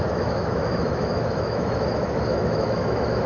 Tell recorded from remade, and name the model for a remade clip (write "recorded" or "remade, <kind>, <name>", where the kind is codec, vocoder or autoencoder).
remade, autoencoder, DAC-VAE